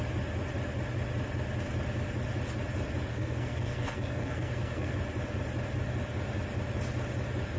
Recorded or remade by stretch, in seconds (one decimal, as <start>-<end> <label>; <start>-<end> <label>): 0.0-3.1 recorded; 3.1-4.9 remade; 4.9-7.6 recorded

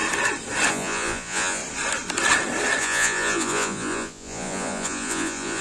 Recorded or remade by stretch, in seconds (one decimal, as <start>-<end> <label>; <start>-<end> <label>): 0.0-0.7 recorded; 0.7-1.6 remade; 1.6-2.8 recorded; 2.8-5.6 remade

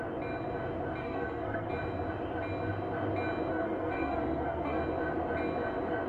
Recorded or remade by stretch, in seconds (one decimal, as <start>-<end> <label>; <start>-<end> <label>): 0.0-1.0 recorded; 1.0-1.7 remade; 1.7-3.5 recorded; 3.5-4.8 remade; 4.8-6.1 recorded

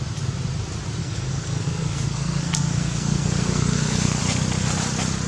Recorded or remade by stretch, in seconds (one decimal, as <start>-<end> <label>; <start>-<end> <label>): 0.0-1.0 recorded; 1.0-4.2 remade; 4.2-5.3 recorded

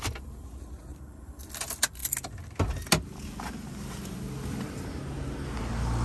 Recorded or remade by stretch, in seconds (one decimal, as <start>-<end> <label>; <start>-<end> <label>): 0.0-6.0 recorded

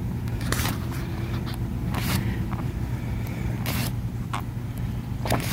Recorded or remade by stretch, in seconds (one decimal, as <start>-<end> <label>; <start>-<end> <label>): 0.0-1.1 remade; 1.1-1.7 recorded; 1.7-3.5 remade; 3.5-5.5 recorded

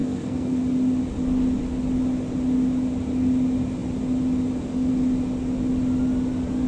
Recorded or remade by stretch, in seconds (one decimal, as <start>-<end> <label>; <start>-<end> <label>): 0.0-0.6 remade; 0.6-6.7 recorded

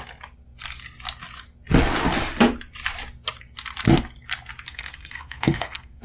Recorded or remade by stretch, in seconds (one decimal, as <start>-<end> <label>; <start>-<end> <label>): 0.0-4.7 recorded; 4.7-6.0 remade